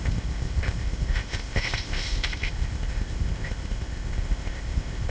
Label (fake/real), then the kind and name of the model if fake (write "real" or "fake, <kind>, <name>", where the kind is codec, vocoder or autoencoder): fake, codec, ZipCodec